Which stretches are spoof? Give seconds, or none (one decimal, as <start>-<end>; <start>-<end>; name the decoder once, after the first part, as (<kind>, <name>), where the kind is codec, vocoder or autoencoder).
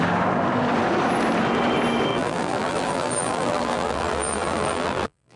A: 2.1-5.4 (vocoder, BigVGAN v2)